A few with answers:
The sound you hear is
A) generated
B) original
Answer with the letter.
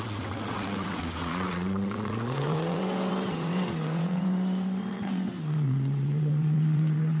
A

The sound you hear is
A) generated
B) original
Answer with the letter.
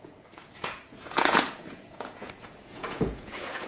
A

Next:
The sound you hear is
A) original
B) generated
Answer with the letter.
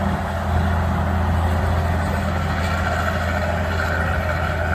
A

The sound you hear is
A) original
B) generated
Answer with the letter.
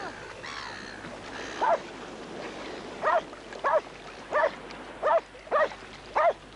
A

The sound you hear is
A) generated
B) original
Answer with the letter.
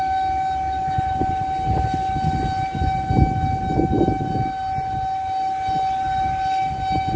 B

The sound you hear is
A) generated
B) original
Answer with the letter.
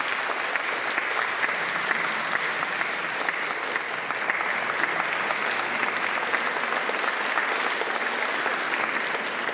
B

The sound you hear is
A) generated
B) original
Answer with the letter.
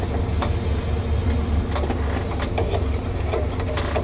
B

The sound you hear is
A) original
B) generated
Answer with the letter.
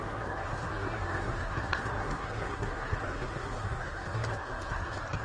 B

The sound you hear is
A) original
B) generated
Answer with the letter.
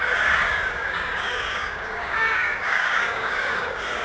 B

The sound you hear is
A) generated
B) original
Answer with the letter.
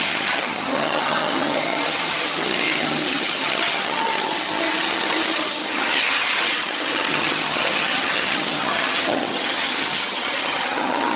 A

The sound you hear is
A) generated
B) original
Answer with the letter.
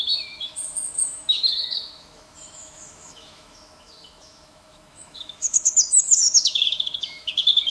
A